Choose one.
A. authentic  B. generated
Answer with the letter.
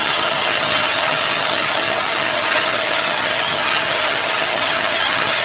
B